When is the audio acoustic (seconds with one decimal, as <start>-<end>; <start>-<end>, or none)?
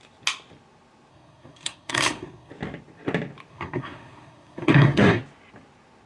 0.0-1.1; 2.5-3.5; 5.2-6.1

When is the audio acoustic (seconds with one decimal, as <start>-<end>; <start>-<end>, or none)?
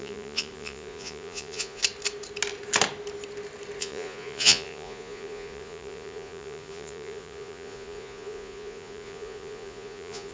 1.8-3.8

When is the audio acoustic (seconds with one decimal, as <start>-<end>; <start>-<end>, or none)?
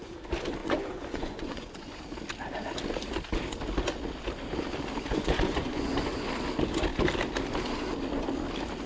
0.0-0.6; 2.0-5.1; 6.3-8.9